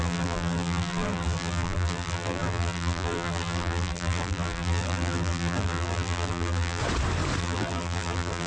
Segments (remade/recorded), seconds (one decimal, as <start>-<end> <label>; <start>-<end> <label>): 0.0-6.8 remade; 6.8-7.4 recorded; 7.4-8.5 remade